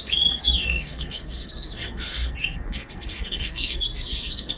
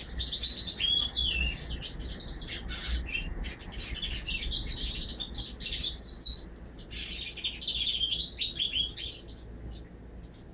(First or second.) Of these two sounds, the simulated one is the first